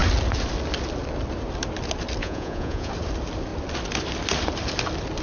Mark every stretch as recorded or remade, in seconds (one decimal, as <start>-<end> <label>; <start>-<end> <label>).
0.0-2.2 recorded; 2.2-2.9 remade; 2.9-5.2 recorded